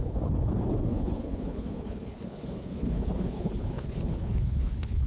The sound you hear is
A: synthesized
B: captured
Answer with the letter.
A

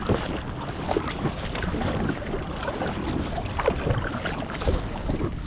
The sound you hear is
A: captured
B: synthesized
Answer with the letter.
A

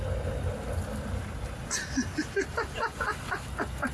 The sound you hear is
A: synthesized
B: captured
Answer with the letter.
B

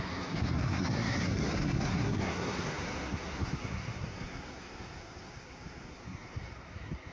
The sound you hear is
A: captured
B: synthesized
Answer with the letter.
B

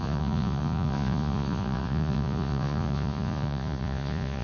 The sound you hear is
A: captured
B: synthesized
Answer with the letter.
B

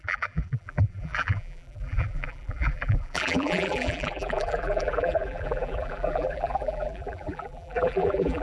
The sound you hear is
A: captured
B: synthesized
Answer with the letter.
B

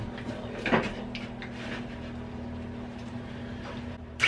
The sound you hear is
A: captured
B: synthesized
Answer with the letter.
A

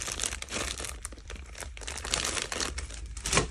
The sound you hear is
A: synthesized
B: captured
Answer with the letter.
A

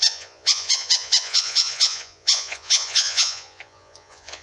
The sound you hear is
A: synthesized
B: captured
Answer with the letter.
A